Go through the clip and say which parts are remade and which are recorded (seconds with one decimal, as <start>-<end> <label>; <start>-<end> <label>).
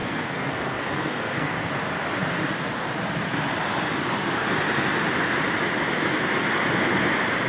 0.0-1.7 remade; 1.7-7.5 recorded